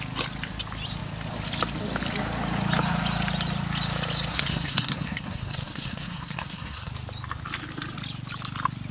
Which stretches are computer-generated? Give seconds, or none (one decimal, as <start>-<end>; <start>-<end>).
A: 4.3-6.9